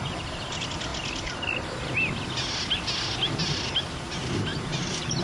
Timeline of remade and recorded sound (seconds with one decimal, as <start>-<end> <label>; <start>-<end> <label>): 0.0-4.5 recorded; 4.5-5.2 remade